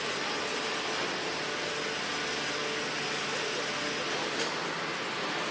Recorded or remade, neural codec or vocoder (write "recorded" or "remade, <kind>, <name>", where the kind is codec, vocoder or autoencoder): recorded